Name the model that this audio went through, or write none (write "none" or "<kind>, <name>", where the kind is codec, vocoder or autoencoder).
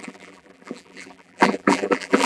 vocoder, BigVGAN v2